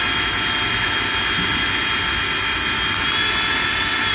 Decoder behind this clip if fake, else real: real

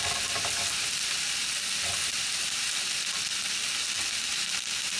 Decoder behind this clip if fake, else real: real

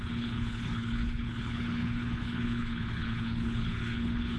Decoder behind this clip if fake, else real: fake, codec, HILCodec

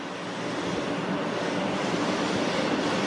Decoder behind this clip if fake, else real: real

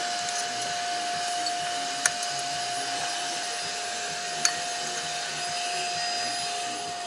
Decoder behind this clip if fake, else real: real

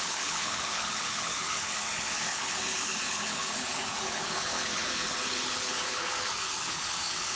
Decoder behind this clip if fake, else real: fake, codec, HILCodec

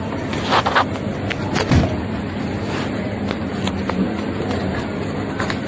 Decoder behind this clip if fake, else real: real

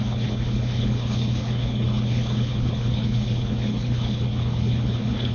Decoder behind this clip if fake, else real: fake, codec, HILCodec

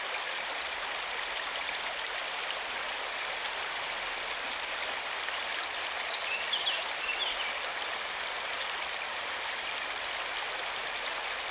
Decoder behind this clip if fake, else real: real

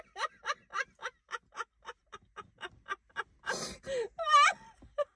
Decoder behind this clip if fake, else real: real